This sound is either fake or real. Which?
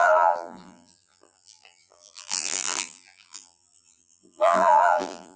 fake